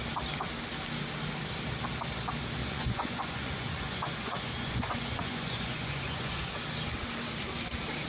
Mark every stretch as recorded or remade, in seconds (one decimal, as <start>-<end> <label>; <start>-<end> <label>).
0.0-2.6 recorded; 2.6-6.5 remade; 6.5-8.1 recorded